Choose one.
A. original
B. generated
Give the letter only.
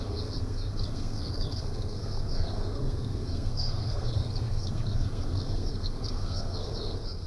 B